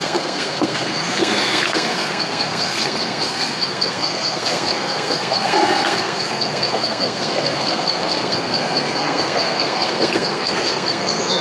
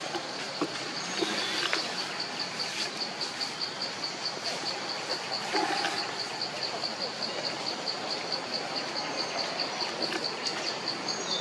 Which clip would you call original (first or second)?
second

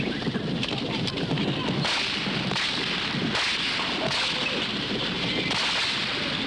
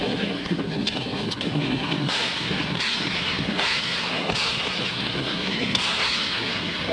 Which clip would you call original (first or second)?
first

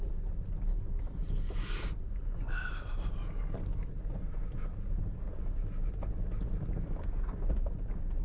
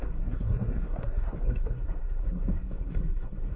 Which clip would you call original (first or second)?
first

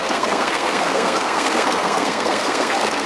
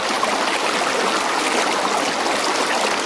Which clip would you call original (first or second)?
second